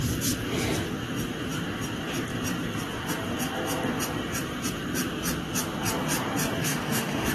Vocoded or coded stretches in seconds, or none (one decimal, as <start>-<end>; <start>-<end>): 6.6-7.3